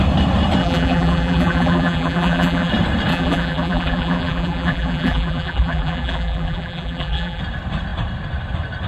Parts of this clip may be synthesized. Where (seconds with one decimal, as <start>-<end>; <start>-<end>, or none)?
0.6-2.7; 3.1-7.4